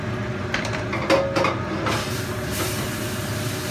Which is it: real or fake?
real